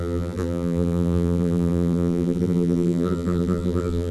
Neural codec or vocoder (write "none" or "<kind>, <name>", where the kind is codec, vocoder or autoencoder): vocoder, BigVGAN v2